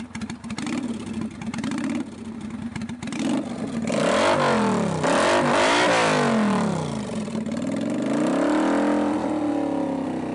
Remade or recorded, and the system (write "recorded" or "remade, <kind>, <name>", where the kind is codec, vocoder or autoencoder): recorded